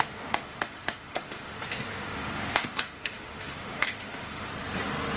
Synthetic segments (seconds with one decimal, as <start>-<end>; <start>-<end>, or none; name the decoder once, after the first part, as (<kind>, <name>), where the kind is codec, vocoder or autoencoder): 0.0-4.5 (autoencoder, DAC-VAE)